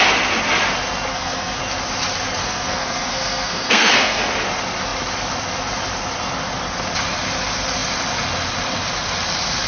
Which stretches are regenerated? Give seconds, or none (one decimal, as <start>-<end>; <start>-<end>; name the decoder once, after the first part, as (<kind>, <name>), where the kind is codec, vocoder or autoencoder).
1.1-1.6 (codec, SNAC); 2.4-4.2